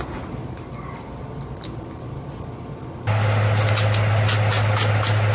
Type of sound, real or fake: real